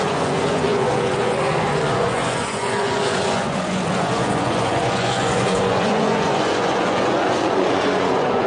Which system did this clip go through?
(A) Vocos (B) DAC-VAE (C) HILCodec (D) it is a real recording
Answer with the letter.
A